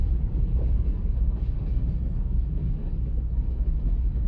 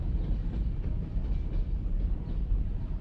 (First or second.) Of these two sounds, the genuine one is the second